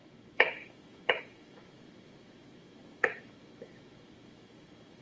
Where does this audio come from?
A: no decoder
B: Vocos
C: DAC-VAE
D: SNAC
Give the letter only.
C